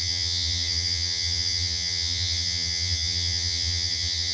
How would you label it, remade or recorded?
remade